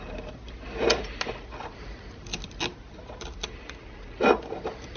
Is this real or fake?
real